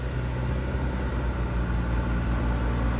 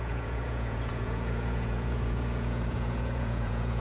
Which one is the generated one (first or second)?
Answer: second